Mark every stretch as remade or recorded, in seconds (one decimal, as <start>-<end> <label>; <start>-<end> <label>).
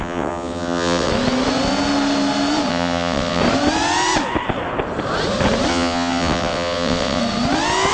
0.0-1.1 remade; 1.1-2.7 recorded; 2.7-3.4 remade; 3.4-5.7 recorded; 5.7-7.2 remade; 7.2-7.9 recorded